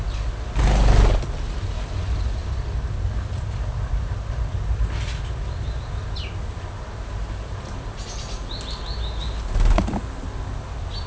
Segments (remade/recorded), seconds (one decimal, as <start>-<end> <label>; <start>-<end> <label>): 0.0-11.1 recorded